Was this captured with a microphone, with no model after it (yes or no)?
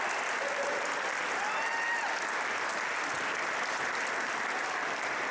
yes